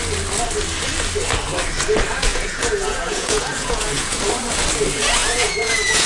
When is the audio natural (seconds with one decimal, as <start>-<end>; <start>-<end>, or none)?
0.0-2.3; 4.2-5.2